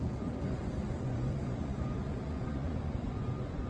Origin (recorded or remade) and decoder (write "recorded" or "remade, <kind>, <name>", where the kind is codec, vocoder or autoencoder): remade, vocoder, Vocos